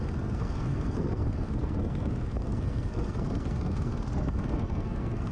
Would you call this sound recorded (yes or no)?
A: no